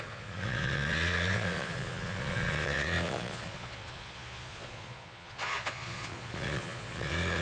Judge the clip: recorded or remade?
remade